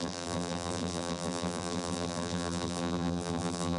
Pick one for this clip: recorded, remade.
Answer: remade